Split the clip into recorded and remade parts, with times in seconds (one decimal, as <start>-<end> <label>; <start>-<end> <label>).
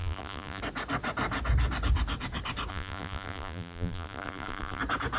0.0-0.6 remade; 0.6-2.7 recorded; 2.7-4.8 remade; 4.8-5.2 recorded